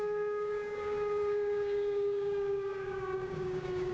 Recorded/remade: remade